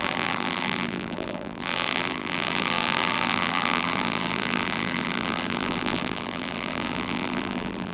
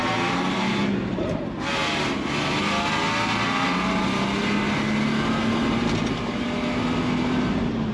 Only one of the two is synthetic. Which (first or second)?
first